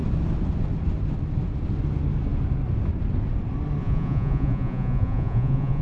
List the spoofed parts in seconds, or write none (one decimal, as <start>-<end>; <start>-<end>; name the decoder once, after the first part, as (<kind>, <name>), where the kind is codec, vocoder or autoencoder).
3.8-5.8 (vocoder, Vocos)